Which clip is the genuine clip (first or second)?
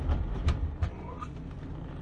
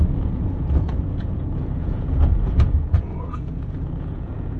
first